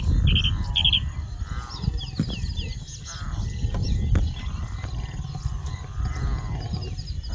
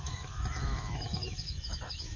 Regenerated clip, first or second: second